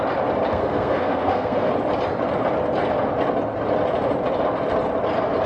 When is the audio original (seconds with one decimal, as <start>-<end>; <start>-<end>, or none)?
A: 0.0-0.5; 1.7-5.5